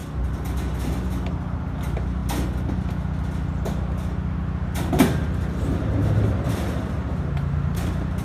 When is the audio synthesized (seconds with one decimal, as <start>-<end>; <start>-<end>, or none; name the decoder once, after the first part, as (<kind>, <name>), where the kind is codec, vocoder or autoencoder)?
6.0-6.9 (vocoder, BigVGAN v2)